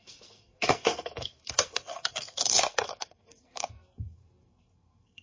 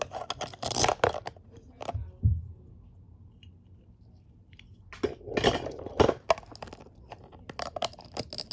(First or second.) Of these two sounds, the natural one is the second